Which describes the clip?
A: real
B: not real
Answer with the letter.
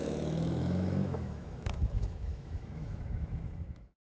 B